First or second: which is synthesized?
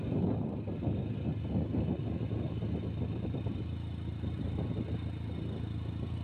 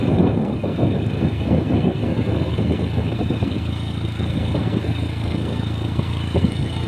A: second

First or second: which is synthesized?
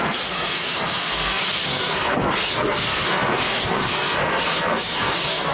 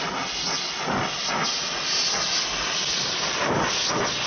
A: first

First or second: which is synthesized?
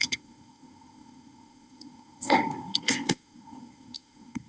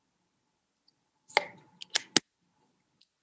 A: first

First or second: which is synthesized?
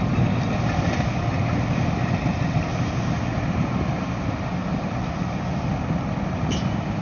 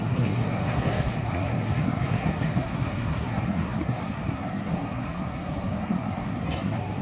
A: second